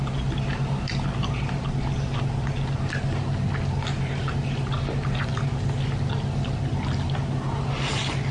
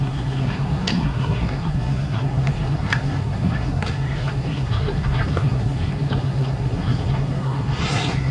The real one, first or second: first